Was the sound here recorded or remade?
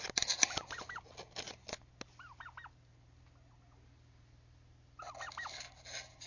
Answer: recorded